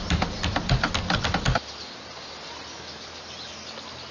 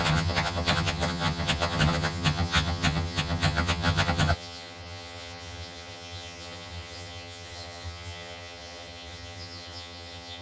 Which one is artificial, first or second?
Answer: second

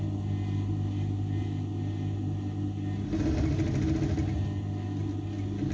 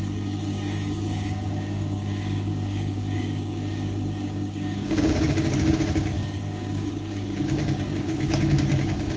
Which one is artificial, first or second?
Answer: second